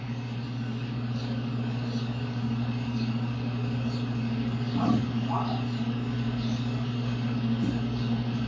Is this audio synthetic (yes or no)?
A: yes